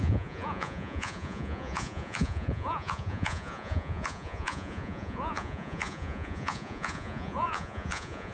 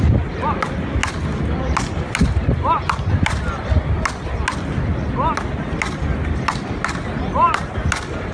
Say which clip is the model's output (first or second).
first